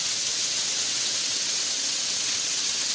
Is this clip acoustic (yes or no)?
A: no